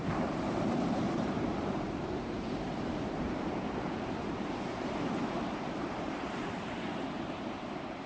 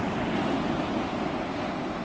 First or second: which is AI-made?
first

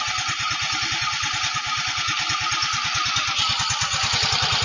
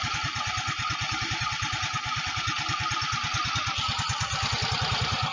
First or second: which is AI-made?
second